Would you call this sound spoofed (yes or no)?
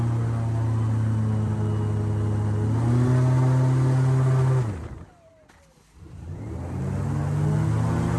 no